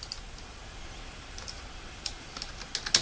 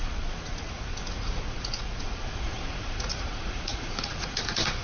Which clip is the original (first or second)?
first